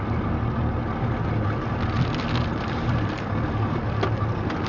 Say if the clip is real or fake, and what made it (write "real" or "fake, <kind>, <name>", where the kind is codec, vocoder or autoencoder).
real